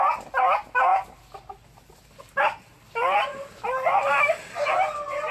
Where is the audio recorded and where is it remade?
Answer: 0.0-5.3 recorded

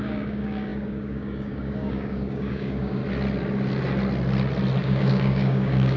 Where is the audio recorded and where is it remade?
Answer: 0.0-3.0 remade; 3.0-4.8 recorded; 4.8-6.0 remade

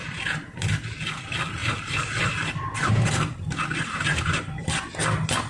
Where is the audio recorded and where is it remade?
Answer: 0.0-0.7 remade; 0.7-1.6 recorded; 1.6-4.9 remade; 4.9-5.5 recorded

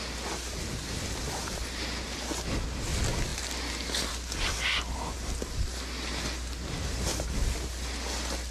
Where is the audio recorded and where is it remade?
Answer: 0.0-8.5 recorded